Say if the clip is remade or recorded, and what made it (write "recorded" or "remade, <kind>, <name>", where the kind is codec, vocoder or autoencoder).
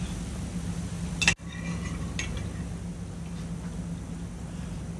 recorded